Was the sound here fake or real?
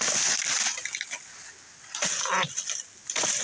real